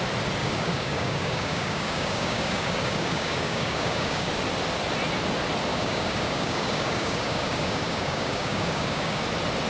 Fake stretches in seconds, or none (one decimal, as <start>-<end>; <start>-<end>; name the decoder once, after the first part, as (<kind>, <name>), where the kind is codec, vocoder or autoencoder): 0.4-4.3 (codec, DAC); 5.7-9.2